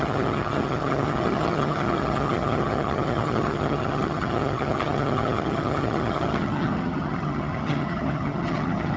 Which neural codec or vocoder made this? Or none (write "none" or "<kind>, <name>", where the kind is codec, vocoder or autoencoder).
vocoder, HiFi-GAN